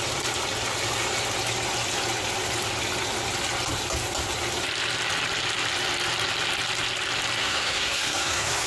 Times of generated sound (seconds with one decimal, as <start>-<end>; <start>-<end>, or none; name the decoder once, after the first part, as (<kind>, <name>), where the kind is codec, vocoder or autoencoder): 7.4-8.7 (codec, SNAC)